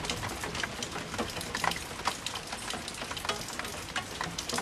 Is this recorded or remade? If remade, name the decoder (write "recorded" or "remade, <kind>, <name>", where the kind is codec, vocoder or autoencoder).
recorded